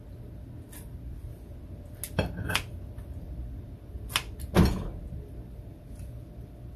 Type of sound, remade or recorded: recorded